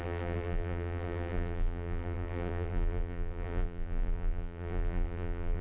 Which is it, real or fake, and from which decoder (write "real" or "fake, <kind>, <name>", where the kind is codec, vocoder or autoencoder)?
fake, vocoder, BigVGAN v2